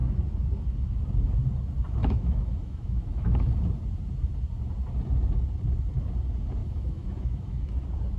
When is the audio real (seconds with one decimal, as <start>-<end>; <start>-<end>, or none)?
0.0-2.0; 3.6-6.6; 7.7-8.2